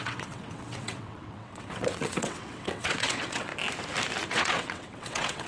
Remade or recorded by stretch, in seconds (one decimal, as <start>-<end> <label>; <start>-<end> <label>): 0.0-3.5 remade; 3.5-4.3 recorded; 4.3-5.5 remade